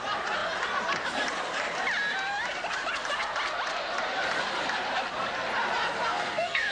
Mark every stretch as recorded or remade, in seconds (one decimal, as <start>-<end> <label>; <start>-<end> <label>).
0.0-6.1 recorded; 6.1-6.7 remade